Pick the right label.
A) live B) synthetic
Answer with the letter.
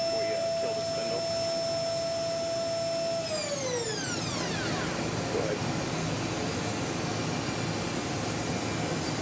A